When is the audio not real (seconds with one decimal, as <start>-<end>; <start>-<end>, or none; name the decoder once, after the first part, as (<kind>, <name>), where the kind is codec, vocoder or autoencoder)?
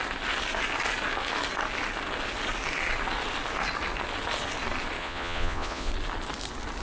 5.0-5.9 (vocoder, Vocos)